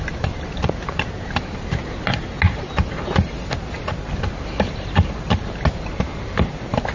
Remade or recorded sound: recorded